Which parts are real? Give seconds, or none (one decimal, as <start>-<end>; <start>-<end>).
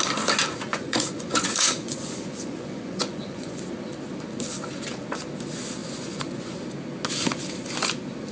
0.0-0.7; 3.6-5.8; 6.6-8.3